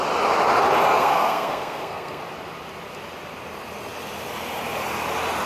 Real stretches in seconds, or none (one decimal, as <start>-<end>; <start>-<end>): 0.0-0.9; 2.2-5.5